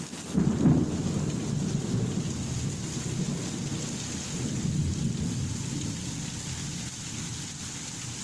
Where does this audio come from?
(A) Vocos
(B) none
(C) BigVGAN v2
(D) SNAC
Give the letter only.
B